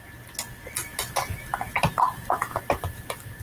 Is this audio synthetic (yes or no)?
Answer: no